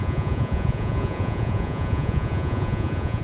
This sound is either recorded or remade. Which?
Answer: remade